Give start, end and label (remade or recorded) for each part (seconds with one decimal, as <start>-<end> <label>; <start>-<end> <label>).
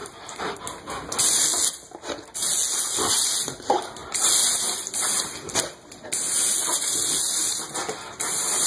0.0-8.7 recorded